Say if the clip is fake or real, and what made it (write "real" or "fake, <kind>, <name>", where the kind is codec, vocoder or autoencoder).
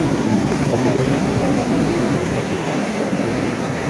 fake, codec, SNAC